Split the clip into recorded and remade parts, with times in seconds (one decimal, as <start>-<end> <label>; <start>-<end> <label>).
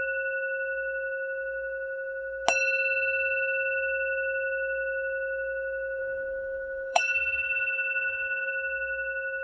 0.0-6.0 recorded; 6.0-8.5 remade; 8.5-9.4 recorded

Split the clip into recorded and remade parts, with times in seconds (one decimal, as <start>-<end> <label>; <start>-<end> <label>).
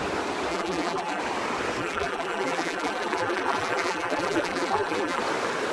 0.0-0.5 recorded; 0.5-1.2 remade; 1.2-1.8 recorded; 1.8-5.2 remade; 5.2-5.7 recorded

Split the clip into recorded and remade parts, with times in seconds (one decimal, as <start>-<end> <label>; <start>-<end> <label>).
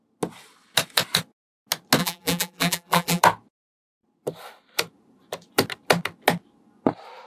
0.0-2.0 recorded; 2.0-3.2 remade; 3.2-7.3 recorded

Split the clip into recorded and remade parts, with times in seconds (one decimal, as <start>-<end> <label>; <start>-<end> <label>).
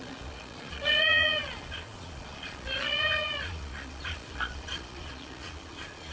0.0-6.1 remade